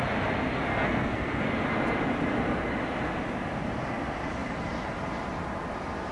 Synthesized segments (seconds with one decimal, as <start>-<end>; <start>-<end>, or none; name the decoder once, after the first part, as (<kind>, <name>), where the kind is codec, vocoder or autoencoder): 0.7-1.4 (codec, SNAC)